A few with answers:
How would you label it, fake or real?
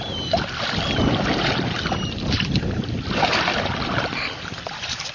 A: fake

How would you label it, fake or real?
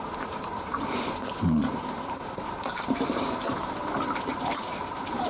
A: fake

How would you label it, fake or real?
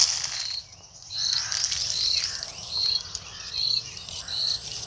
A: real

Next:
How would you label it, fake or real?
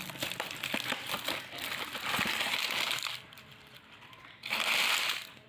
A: fake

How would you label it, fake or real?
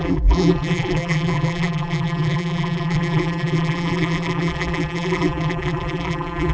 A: fake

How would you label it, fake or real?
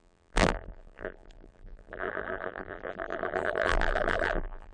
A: fake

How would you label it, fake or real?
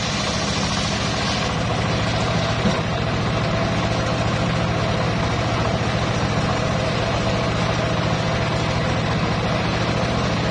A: real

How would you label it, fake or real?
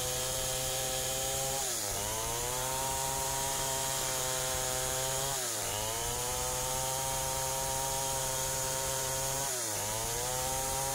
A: fake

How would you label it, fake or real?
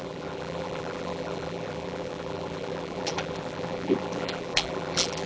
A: fake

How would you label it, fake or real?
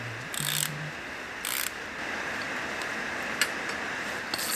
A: real